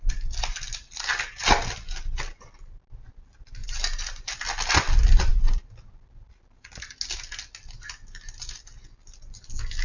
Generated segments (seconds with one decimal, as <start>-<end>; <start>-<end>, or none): 3.6-4.4